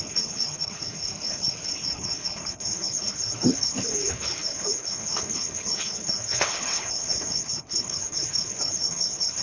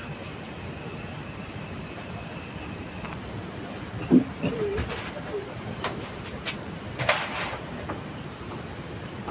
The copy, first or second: first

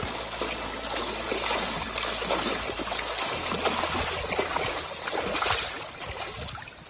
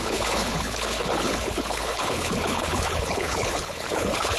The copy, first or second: second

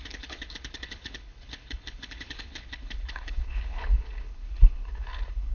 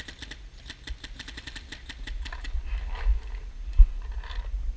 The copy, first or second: first